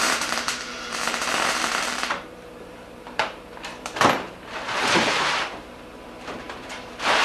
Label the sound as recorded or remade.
remade